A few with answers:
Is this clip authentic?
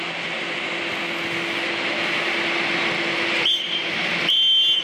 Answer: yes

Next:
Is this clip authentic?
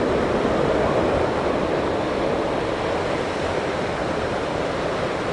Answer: no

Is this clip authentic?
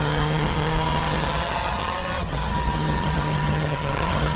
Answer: no